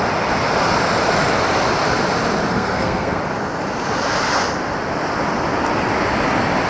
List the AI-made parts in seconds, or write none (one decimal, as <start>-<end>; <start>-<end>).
2.5-3.2